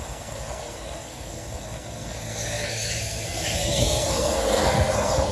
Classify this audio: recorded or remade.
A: remade